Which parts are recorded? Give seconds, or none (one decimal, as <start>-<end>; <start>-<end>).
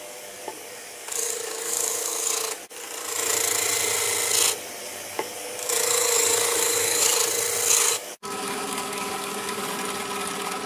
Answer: 2.6-4.8; 7.2-7.7; 9.6-10.7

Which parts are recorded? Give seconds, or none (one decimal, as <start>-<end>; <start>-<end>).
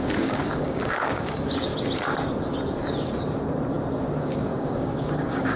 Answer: 1.7-4.2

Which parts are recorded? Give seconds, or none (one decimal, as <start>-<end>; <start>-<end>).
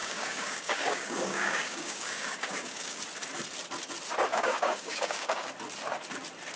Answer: 3.0-4.3; 5.5-6.6